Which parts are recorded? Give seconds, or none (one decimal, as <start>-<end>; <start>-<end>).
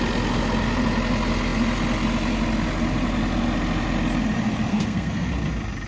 0.0-4.7; 5.3-5.9